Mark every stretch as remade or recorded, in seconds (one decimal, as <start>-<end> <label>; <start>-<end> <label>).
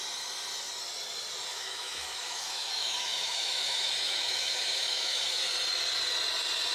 0.0-1.5 recorded; 1.5-5.5 remade; 5.5-6.7 recorded